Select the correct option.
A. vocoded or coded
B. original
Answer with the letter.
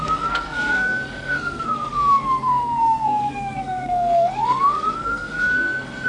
A